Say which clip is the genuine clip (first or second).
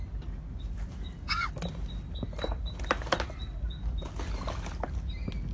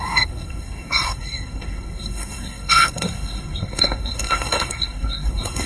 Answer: first